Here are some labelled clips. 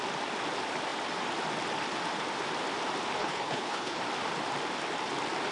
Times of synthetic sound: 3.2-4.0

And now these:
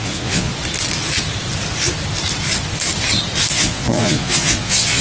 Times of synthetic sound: 0.0-0.5; 3.5-5.0

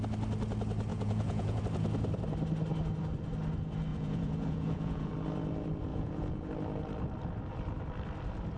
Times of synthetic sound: 0.9-1.6; 3.9-5.1; 5.9-6.5

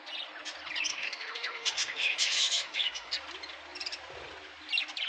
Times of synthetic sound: 0.9-3.1